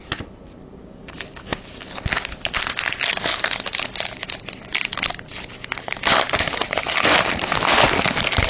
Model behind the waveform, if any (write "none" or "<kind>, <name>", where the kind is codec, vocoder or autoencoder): none